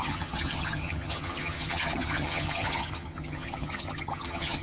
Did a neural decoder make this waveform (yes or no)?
yes